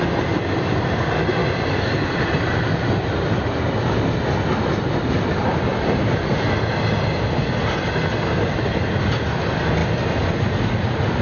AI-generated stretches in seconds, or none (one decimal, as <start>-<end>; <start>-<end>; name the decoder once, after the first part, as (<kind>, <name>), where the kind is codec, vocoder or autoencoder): none